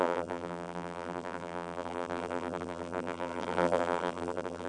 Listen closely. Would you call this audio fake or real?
fake